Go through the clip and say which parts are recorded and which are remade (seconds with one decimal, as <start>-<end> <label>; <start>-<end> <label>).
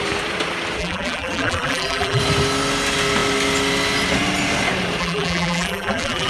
0.0-0.8 recorded; 0.8-2.2 remade; 2.2-5.0 recorded; 5.0-6.3 remade